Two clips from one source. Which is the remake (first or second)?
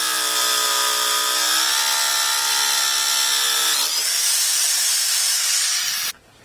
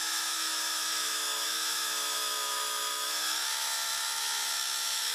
second